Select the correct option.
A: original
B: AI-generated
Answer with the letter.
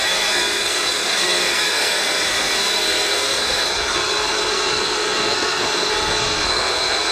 B